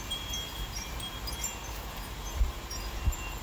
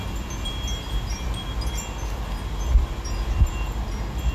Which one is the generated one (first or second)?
first